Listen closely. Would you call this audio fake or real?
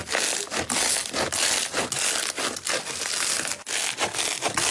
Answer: real